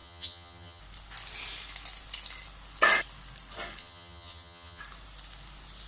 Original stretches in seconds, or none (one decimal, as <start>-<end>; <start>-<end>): 0.8-3.8; 4.8-5.9